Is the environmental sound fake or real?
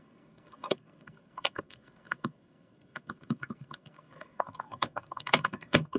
fake